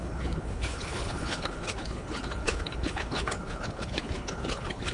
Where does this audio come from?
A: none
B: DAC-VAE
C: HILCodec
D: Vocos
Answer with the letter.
C